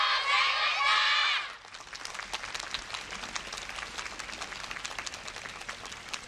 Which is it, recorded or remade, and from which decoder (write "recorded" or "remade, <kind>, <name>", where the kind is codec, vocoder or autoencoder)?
recorded